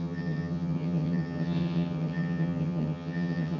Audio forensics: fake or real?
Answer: fake